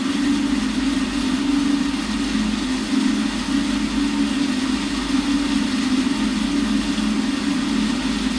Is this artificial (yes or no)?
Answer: no